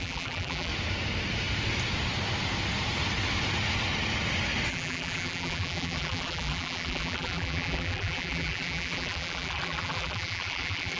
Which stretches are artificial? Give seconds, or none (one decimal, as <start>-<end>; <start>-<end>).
0.0-0.7; 4.7-11.0